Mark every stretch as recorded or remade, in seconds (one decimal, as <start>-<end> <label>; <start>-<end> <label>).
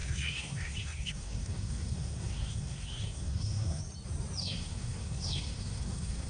0.0-3.8 remade; 3.8-4.4 recorded; 4.4-6.3 remade